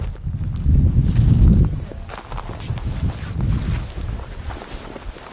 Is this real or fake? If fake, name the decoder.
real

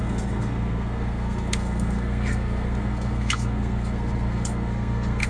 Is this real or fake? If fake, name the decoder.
fake, codec, SNAC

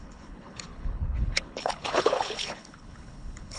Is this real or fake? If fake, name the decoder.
fake, codec, HILCodec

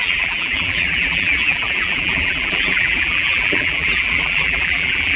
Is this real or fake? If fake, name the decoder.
fake, vocoder, BigVGAN v2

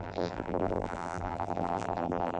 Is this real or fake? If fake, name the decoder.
fake, vocoder, BigVGAN v2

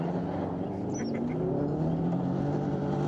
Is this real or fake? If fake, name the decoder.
real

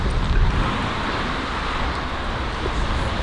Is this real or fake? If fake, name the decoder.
real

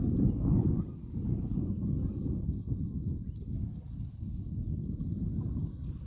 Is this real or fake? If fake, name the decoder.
real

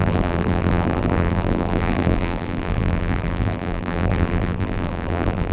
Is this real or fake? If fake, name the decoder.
fake, vocoder, BigVGAN v2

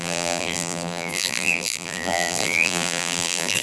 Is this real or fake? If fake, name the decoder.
fake, vocoder, BigVGAN v2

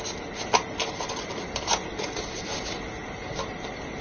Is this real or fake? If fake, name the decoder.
real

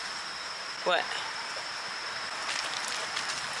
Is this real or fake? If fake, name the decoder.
real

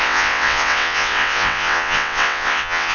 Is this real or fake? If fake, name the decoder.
fake, vocoder, WaveNeXt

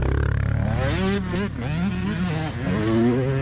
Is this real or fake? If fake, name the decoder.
real